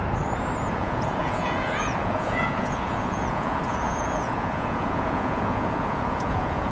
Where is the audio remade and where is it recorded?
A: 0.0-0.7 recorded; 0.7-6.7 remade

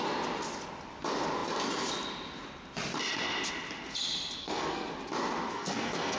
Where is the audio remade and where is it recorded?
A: 0.0-4.4 recorded; 4.4-4.9 remade; 4.9-5.5 recorded; 5.5-6.2 remade

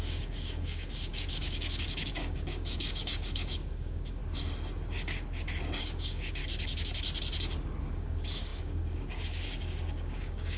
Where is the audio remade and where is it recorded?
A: 0.0-4.2 remade; 4.2-5.8 recorded; 5.8-6.4 remade; 6.4-7.8 recorded; 7.8-10.6 remade

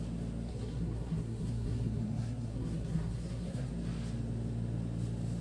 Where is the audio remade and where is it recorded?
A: 0.0-0.5 recorded; 0.5-3.7 remade; 3.7-5.4 recorded

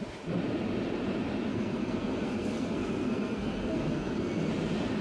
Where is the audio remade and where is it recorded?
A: 0.0-1.5 recorded; 1.5-4.5 remade; 4.5-5.0 recorded